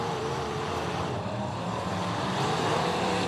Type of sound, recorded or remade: remade